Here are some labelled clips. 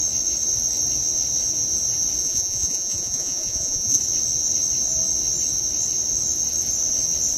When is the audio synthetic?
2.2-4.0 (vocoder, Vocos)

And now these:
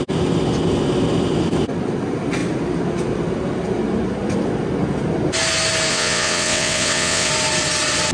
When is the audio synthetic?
5.9-7.3 (vocoder, WaveNeXt)